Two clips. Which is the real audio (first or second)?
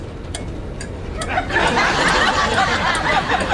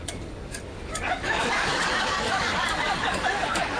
first